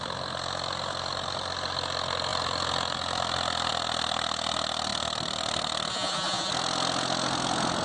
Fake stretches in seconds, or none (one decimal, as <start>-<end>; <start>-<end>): 5.9-6.5